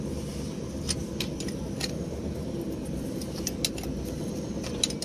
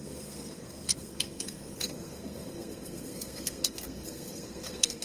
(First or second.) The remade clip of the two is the second